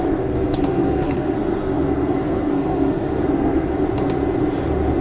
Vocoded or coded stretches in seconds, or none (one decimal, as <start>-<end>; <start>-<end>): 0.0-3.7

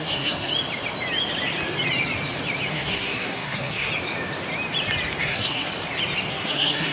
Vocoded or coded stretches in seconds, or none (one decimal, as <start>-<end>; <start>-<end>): 0.0-0.5; 2.7-3.9; 5.2-5.7; 6.3-6.9

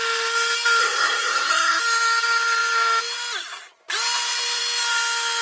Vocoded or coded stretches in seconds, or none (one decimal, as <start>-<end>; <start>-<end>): 0.8-1.8

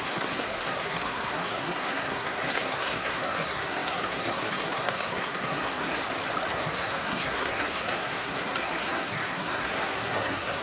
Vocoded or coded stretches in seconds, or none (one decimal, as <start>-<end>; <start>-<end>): 0.0-6.0; 6.5-10.6